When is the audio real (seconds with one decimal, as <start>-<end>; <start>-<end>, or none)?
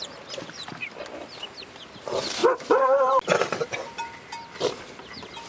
0.0-5.5